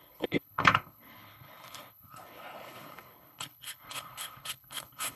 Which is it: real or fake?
fake